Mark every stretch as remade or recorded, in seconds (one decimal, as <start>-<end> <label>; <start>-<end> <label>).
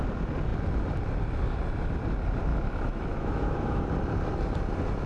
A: 0.0-2.5 recorded; 2.5-3.8 remade; 3.8-5.1 recorded